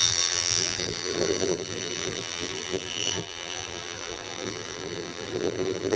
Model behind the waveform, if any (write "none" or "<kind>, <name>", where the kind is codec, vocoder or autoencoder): vocoder, BigVGAN v2